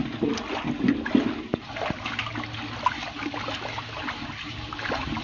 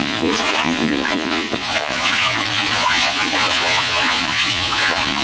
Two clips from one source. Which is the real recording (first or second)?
first